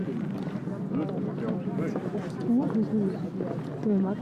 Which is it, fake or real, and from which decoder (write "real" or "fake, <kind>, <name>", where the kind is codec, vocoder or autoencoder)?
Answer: real